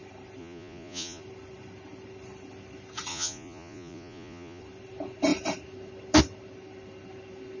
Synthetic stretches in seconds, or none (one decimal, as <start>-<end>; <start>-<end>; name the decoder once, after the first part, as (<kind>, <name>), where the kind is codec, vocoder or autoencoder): 0.4-1.2 (vocoder, Vocos); 3.1-4.6

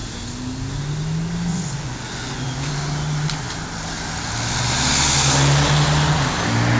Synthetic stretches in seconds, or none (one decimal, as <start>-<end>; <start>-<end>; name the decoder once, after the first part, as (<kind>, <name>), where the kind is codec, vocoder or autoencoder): 1.5-2.7 (vocoder, Vocos)